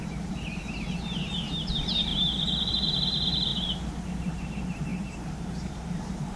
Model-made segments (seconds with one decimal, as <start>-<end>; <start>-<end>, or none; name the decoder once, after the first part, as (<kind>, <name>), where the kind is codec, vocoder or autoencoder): 0.0-2.1 (vocoder, BigVGAN v2); 2.7-3.5; 4.5-6.4